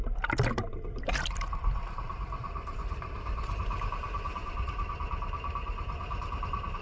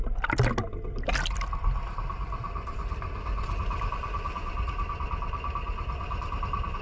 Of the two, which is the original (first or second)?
second